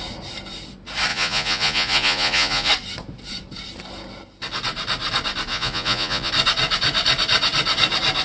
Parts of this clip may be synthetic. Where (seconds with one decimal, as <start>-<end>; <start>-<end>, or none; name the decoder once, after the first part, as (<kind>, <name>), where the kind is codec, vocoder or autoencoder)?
1.1-2.7 (vocoder, Vocos); 5.5-6.3